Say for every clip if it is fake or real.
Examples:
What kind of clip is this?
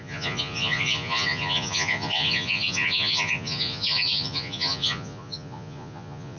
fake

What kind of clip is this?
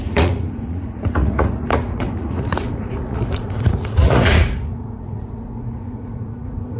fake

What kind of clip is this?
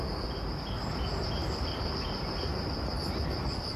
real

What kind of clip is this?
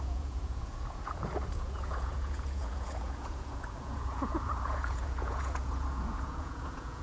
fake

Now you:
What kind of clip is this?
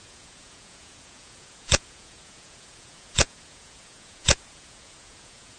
fake